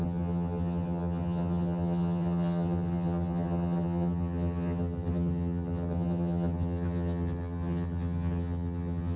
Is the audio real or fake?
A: fake